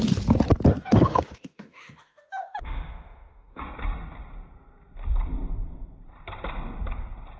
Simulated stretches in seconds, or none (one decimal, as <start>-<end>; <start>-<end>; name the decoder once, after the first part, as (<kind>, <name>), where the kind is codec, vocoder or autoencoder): 0.8-3.6 (autoencoder, DAC-VAE)